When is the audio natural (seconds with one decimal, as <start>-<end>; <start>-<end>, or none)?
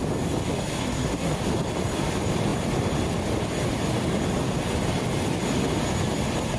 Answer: 0.0-0.8; 1.4-6.6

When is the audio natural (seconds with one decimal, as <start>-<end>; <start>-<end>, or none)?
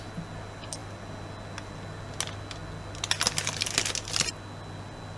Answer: 0.0-5.2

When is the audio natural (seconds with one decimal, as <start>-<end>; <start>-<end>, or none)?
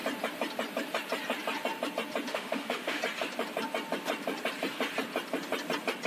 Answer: 0.0-2.3; 3.0-6.1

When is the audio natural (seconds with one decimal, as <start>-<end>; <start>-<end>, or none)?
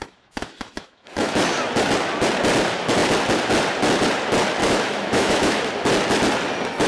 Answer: 1.4-4.6; 5.6-6.9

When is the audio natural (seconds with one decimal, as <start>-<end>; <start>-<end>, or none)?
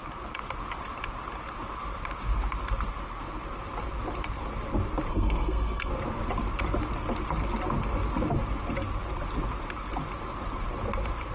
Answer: 0.0-5.1; 5.9-11.3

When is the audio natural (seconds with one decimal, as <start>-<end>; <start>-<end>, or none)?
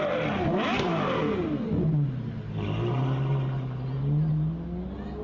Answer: 0.0-5.2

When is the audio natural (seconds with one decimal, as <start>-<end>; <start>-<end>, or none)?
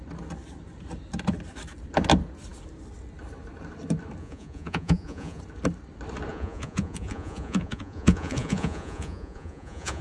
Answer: 0.0-4.2; 5.4-6.3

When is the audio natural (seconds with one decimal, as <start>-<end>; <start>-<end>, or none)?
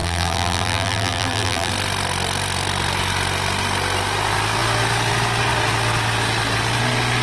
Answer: 1.7-7.2